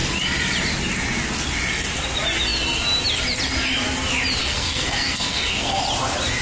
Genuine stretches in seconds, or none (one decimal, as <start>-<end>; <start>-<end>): 0.0-4.4; 5.8-6.4